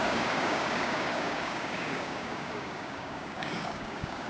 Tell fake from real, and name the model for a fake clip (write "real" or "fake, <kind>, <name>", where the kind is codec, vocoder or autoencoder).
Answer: fake, codec, DAC